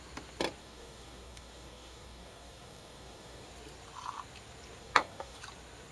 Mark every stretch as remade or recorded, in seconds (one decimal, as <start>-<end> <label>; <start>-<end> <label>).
0.0-0.6 recorded; 0.6-3.5 remade; 3.5-4.8 recorded; 4.8-5.4 remade; 5.4-5.9 recorded

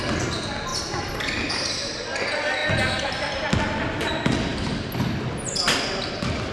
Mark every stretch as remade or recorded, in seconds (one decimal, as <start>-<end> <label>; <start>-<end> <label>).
0.0-6.5 recorded

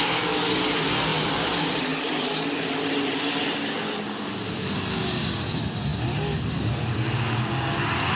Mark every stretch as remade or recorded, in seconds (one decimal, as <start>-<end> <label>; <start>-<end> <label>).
0.0-8.1 recorded

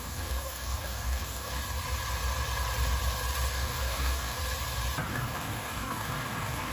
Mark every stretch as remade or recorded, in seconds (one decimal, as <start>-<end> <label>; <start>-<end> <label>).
0.0-1.6 remade; 1.6-3.5 recorded; 3.5-4.4 remade; 4.4-5.1 recorded; 5.1-6.7 remade

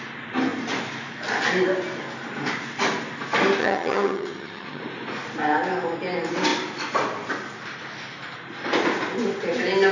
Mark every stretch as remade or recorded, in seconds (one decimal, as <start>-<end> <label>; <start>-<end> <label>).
0.0-3.6 recorded; 3.6-4.8 remade; 4.8-9.9 recorded

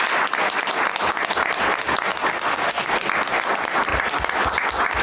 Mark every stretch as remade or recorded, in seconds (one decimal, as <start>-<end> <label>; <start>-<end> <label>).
0.0-2.3 recorded; 2.3-2.9 remade; 2.9-5.0 recorded

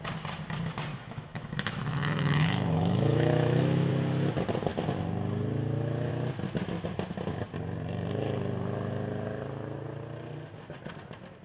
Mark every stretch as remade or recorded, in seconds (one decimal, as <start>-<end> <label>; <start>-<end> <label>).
0.0-0.9 recorded; 0.9-3.9 remade; 3.9-11.4 recorded